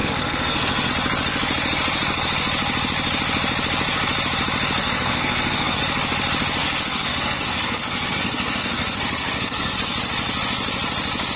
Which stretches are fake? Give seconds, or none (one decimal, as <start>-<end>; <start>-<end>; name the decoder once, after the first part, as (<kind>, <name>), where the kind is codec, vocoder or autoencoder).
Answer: 0.0-0.9 (codec, SNAC); 4.8-5.8; 6.6-9.8